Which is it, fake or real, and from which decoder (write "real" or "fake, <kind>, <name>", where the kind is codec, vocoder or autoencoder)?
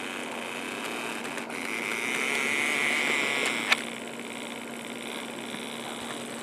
real